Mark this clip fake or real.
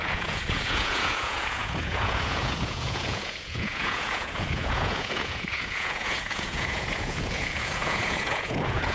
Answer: fake